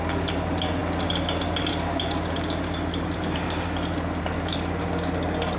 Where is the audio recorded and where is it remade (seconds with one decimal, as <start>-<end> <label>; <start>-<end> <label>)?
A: 0.0-5.6 recorded